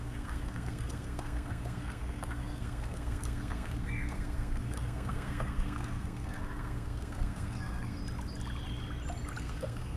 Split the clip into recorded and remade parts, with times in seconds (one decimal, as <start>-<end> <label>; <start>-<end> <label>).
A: 0.0-8.0 remade; 8.0-9.4 recorded; 9.4-10.0 remade

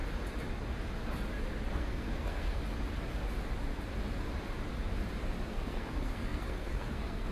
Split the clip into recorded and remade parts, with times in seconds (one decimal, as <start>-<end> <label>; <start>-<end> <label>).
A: 0.0-1.7 recorded; 1.7-2.6 remade; 2.6-5.5 recorded; 5.5-7.3 remade